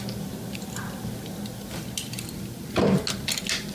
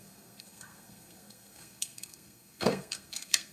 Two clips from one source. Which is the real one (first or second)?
first